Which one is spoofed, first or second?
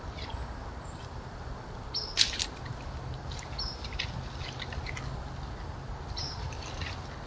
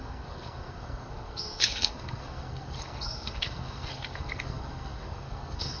second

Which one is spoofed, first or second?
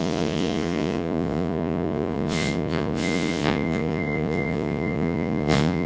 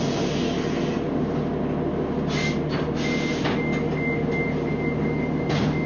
first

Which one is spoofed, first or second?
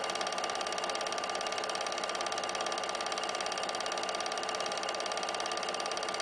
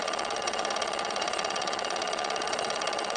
second